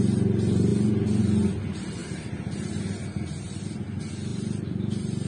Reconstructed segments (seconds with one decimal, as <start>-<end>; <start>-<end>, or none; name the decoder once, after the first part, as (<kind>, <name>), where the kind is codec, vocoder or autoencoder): 2.0-2.8 (vocoder, BigVGAN v2); 4.3-5.3